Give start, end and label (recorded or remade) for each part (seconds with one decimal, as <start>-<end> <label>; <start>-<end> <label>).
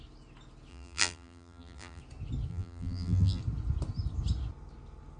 0.0-0.7 recorded; 0.7-2.0 remade; 2.0-2.5 recorded; 2.5-3.4 remade; 3.4-5.2 recorded